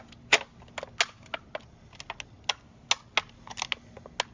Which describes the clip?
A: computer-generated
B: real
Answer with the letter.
B